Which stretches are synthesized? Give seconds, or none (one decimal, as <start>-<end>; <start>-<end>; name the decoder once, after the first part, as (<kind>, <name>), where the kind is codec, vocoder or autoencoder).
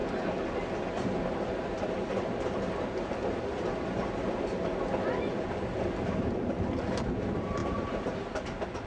none